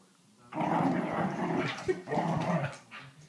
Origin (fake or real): real